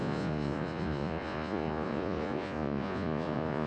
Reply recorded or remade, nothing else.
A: remade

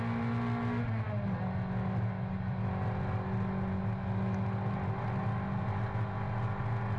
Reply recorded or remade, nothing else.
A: recorded